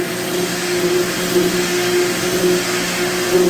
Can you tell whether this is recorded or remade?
recorded